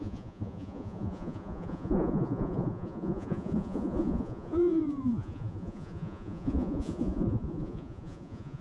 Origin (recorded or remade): remade